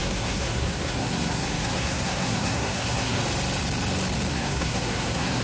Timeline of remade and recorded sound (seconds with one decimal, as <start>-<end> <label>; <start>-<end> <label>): 0.0-3.2 remade; 3.2-4.3 recorded; 4.3-5.4 remade